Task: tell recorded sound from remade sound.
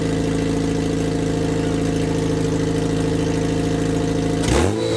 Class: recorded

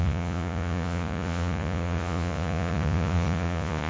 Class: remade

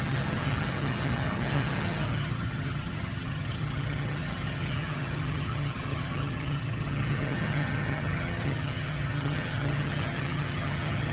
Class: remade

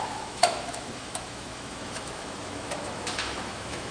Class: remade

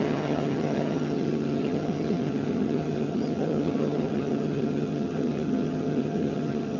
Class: remade